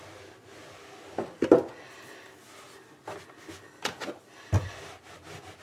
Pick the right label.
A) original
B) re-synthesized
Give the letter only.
A